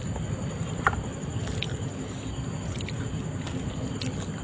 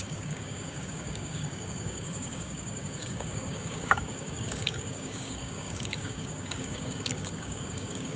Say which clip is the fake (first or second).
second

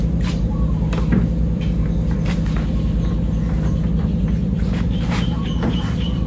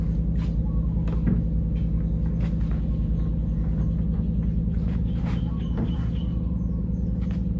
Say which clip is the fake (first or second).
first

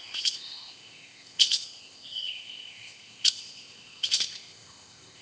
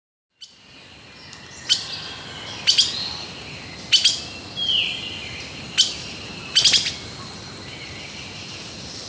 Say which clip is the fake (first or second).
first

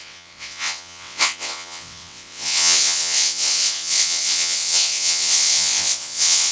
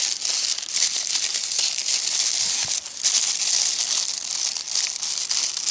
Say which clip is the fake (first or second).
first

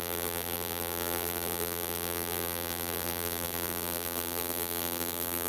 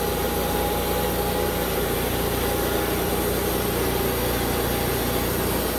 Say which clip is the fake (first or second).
first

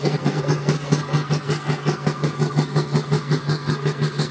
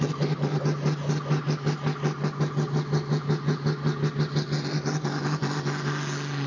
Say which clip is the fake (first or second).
first